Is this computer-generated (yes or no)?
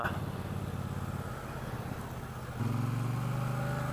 no